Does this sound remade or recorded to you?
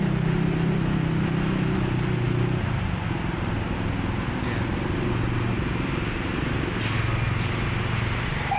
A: recorded